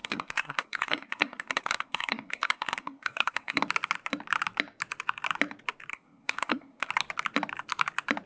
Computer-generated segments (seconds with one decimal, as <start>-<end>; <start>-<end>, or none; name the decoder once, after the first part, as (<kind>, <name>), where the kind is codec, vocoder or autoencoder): 0.0-3.6 (codec, SNAC); 5.9-6.9